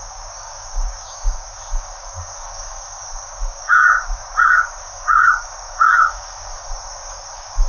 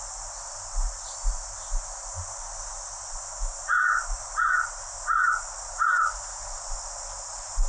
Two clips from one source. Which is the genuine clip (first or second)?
second